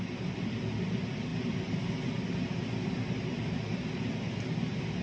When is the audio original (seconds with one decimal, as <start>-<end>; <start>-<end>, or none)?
0.0-5.0